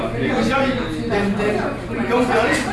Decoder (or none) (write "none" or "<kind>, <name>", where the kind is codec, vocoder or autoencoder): none